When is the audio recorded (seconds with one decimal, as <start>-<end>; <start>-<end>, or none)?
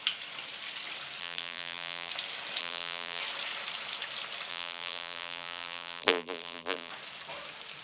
0.0-1.2; 2.1-2.6; 3.2-4.5; 6.9-7.8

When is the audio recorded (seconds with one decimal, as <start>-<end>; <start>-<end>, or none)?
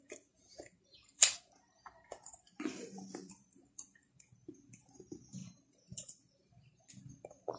none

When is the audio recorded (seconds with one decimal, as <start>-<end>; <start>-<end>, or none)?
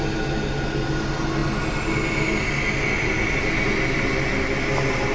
0.0-5.1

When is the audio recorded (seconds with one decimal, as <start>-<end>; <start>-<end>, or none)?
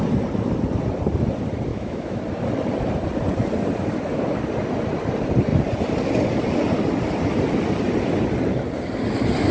0.0-1.7; 2.2-9.5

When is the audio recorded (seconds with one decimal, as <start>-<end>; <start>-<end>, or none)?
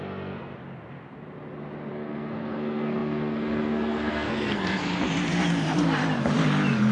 0.5-1.9; 4.9-6.9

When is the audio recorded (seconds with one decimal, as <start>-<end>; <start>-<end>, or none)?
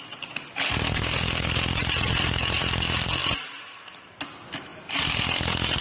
0.0-5.8